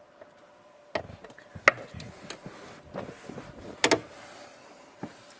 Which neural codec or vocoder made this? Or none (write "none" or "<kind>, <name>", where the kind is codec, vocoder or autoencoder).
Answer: none